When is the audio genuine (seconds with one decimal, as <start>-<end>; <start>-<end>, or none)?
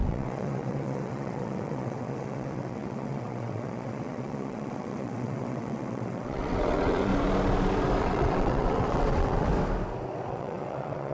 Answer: 7.1-8.0; 9.5-10.3